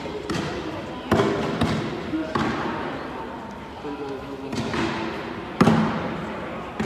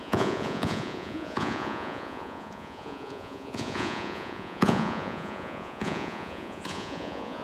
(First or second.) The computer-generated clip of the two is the second